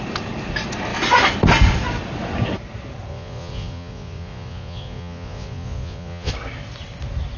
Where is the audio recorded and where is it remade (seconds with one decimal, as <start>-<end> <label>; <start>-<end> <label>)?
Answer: 0.0-3.1 recorded; 3.1-6.3 remade; 6.3-7.4 recorded

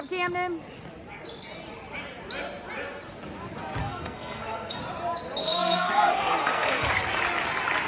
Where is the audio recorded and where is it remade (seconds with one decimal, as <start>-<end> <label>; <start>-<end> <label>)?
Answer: 0.0-3.8 recorded; 3.8-4.8 remade; 4.8-5.4 recorded; 5.4-6.9 remade; 6.9-7.9 recorded

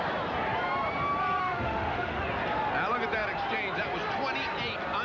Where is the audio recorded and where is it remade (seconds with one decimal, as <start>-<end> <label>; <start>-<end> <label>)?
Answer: 0.0-1.4 recorded; 1.4-2.2 remade; 2.2-5.0 recorded

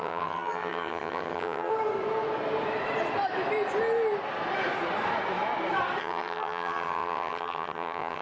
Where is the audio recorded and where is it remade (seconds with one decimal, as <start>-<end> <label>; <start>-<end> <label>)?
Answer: 0.0-1.7 remade; 1.7-6.0 recorded; 6.0-8.2 remade

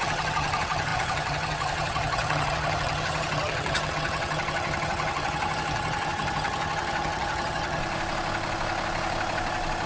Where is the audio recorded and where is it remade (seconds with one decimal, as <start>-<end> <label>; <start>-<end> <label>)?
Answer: 0.0-7.8 remade; 7.8-9.9 recorded